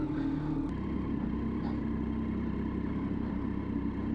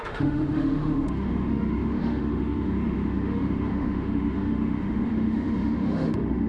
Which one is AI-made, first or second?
second